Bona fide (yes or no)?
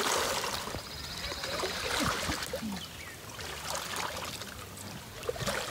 yes